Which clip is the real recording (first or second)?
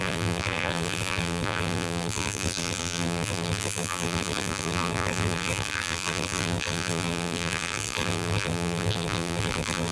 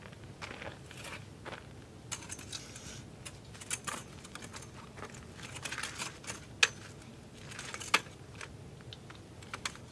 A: second